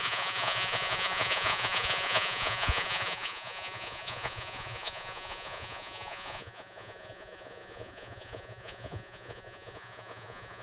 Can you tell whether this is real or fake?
fake